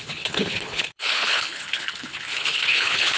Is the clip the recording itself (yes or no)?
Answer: no